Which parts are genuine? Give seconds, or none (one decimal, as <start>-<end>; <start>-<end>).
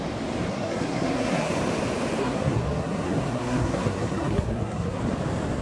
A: 0.0-0.5; 1.5-2.2; 5.0-5.6